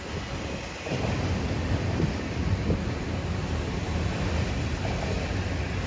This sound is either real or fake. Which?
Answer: real